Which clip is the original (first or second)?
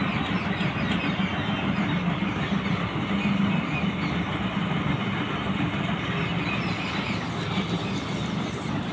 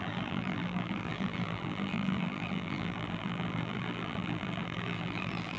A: first